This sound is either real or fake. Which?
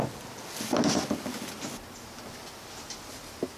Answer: real